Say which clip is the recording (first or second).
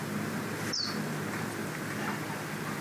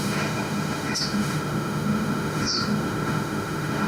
first